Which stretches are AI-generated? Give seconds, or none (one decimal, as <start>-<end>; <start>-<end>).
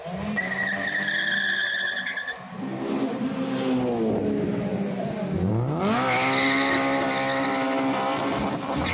4.7-5.5